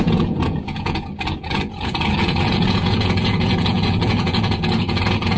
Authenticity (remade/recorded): remade